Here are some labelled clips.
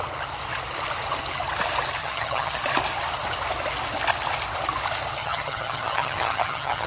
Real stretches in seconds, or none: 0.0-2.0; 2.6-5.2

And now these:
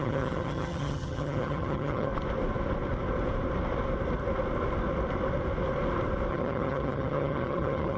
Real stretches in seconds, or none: 2.1-6.3

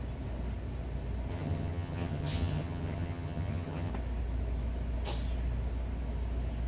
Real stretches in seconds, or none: 0.0-1.3; 3.9-6.7

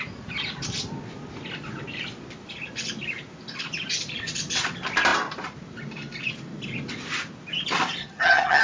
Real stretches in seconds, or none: 0.0-8.0

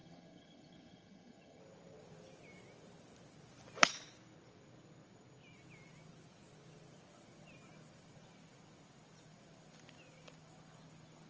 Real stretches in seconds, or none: 1.6-11.3

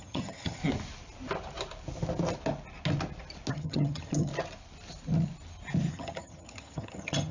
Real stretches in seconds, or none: 0.6-3.5; 4.3-5.9

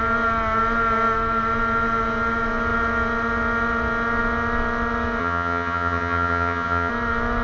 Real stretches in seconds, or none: 0.0-5.2; 6.9-7.4